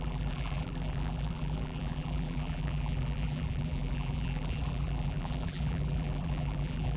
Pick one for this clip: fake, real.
fake